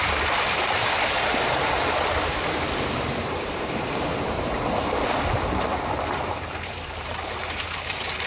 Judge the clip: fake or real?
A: fake